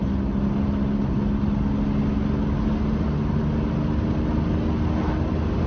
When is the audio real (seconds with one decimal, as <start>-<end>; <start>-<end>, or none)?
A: 0.0-5.7